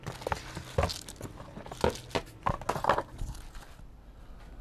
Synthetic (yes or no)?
no